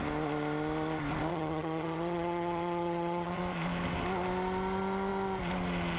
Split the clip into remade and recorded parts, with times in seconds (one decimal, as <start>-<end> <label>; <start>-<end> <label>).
0.0-1.3 recorded; 1.3-3.4 remade; 3.4-6.0 recorded